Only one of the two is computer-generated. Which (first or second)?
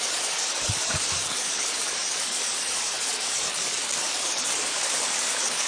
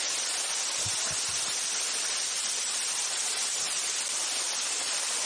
first